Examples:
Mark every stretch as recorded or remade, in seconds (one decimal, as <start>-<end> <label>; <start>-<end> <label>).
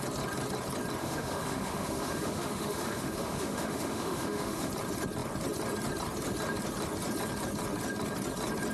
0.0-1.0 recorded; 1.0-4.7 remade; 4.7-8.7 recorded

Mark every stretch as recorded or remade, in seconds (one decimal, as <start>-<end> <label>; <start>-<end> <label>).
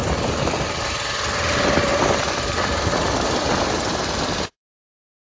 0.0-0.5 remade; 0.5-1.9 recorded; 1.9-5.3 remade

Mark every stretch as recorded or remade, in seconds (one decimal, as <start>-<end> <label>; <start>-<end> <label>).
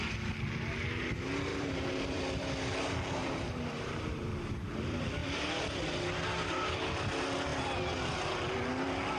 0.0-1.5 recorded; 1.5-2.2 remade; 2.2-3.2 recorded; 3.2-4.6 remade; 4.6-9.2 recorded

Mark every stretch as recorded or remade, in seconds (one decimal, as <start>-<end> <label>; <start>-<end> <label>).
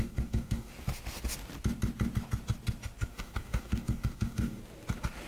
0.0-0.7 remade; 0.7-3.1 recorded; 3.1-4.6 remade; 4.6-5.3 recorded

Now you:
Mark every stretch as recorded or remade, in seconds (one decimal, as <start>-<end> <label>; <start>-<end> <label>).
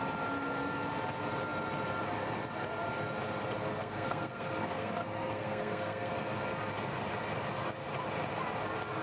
0.0-3.8 recorded; 3.8-6.1 remade; 6.1-9.0 recorded